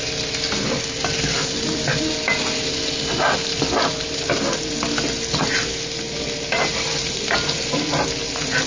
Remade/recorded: recorded